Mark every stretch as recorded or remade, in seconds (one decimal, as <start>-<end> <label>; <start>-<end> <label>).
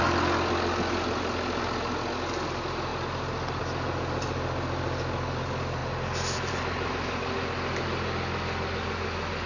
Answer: 0.0-9.5 recorded